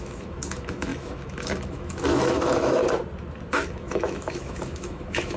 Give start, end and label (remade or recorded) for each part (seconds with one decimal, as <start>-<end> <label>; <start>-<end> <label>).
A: 0.0-2.8 remade; 2.8-3.6 recorded; 3.6-5.4 remade